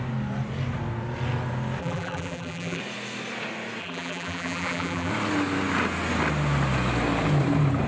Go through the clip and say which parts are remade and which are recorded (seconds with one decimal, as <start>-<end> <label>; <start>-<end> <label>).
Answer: 0.0-1.8 recorded; 1.8-2.8 remade; 2.8-3.8 recorded; 3.8-5.1 remade; 5.1-7.9 recorded